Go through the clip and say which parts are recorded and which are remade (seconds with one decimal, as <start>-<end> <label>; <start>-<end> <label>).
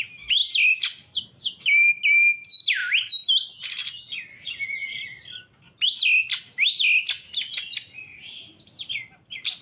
0.0-9.6 recorded